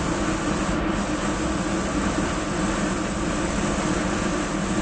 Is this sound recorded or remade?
recorded